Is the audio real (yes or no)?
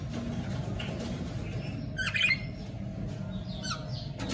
yes